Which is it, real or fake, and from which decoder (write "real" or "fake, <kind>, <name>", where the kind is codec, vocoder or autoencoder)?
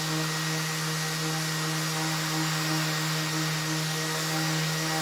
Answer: real